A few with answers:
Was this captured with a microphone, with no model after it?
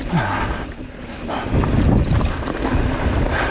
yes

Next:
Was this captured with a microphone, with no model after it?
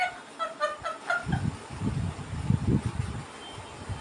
yes